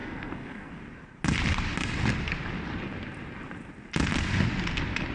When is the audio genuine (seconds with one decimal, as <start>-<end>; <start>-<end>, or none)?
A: 0.7-5.1